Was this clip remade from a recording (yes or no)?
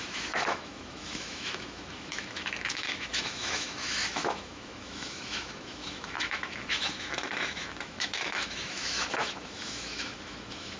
yes